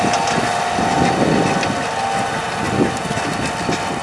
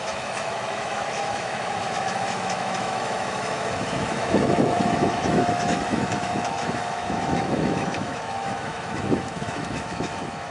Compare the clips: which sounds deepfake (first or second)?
second